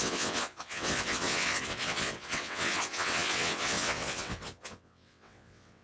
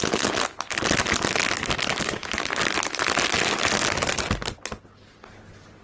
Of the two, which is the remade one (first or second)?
first